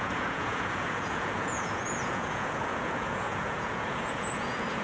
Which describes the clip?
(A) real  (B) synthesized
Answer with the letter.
B